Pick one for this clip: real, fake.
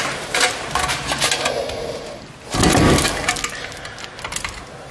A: real